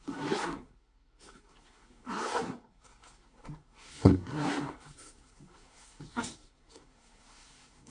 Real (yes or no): no